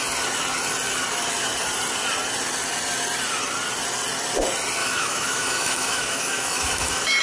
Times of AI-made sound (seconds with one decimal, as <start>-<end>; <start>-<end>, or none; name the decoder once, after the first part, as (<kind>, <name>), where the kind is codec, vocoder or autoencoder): 4.8-7.2 (autoencoder, DAC-VAE)